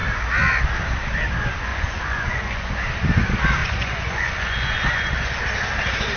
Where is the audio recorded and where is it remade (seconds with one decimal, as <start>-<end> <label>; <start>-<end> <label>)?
0.0-1.7 recorded; 1.7-2.7 remade; 2.7-3.6 recorded; 3.6-5.4 remade; 5.4-6.2 recorded